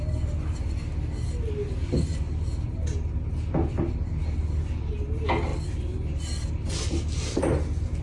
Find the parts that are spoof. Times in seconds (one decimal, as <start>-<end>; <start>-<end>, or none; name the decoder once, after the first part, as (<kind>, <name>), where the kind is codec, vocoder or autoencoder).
none